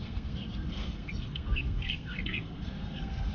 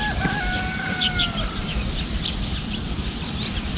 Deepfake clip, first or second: first